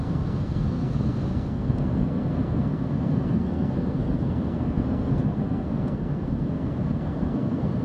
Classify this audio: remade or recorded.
remade